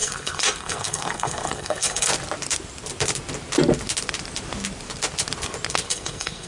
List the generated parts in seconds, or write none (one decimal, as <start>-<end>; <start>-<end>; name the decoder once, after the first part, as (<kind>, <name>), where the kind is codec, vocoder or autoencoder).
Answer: 0.0-2.1 (codec, SNAC); 5.9-6.5

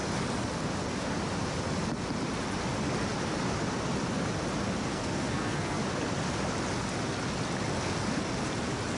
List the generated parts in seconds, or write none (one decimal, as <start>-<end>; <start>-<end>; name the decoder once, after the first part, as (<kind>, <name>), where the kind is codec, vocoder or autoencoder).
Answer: 4.9-5.8 (codec, SNAC)

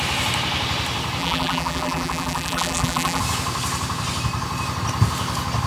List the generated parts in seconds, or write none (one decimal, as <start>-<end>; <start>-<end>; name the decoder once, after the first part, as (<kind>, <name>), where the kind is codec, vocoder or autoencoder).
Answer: 1.2-3.2 (vocoder, BigVGAN v2)

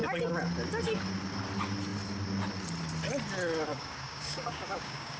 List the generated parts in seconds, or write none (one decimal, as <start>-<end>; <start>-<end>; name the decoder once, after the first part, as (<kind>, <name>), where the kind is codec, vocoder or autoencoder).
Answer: 3.7-5.2 (codec, DAC)

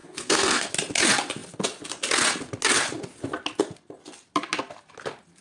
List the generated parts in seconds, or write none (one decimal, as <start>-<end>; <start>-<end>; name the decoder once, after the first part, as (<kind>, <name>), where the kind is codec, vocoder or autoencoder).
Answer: 0.0-0.7 (codec, SNAC)

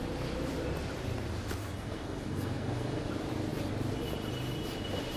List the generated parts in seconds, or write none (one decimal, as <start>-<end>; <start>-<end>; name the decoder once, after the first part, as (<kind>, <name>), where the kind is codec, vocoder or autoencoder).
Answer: 1.6-3.1 (codec, SNAC)